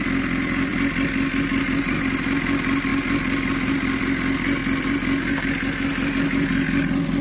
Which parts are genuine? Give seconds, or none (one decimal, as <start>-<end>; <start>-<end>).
0.0-7.2